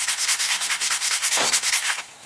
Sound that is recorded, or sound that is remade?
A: remade